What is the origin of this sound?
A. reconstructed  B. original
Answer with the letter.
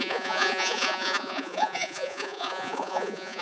A